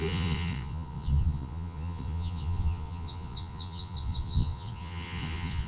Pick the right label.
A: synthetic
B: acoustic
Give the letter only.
A